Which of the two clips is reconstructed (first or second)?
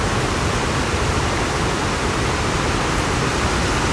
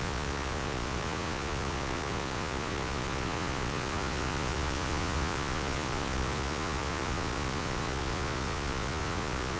second